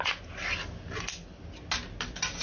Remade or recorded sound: recorded